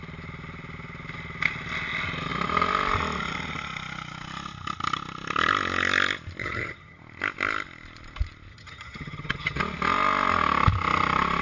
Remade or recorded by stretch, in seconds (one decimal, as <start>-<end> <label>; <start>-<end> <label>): 0.0-6.4 recorded; 6.4-7.0 remade; 7.0-8.5 recorded; 8.5-9.6 remade; 9.6-11.4 recorded